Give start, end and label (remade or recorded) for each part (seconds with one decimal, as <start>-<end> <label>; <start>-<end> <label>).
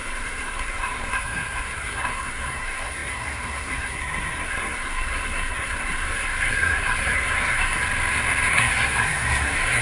0.0-7.8 remade; 7.8-8.5 recorded; 8.5-9.8 remade